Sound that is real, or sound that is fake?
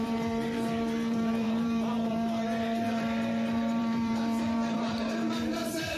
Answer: fake